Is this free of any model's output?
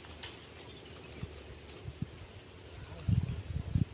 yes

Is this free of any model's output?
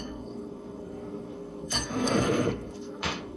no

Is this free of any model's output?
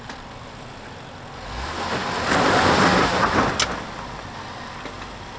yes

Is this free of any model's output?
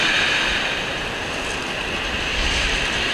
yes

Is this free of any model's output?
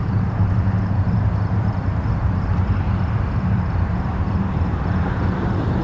no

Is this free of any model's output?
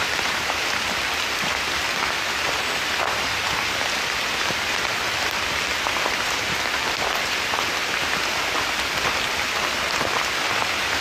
no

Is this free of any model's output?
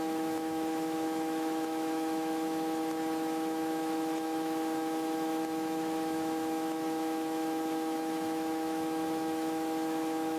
no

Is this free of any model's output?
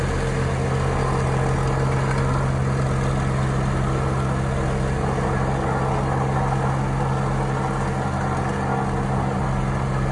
yes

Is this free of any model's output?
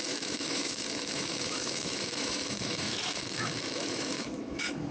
no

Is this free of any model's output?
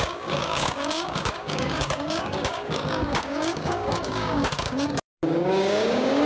no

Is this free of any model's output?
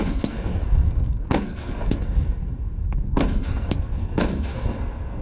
no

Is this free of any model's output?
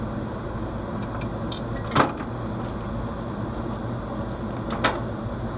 yes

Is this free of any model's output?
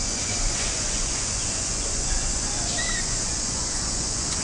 no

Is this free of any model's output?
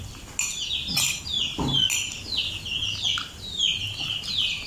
yes